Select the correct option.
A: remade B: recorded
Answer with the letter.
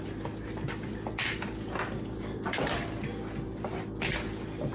B